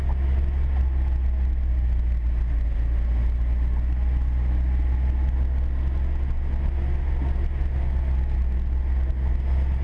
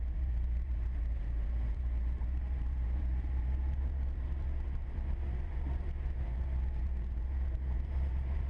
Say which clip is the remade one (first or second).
second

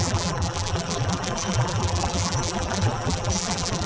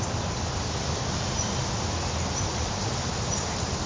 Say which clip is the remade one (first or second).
first